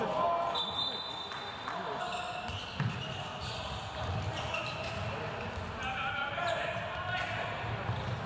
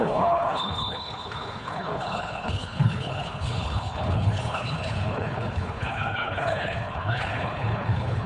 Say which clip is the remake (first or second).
second